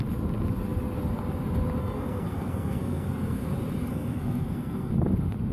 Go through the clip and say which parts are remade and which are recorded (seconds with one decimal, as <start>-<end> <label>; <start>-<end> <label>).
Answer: 0.0-1.8 recorded; 1.8-3.4 remade; 3.4-3.9 recorded; 3.9-4.9 remade; 4.9-5.5 recorded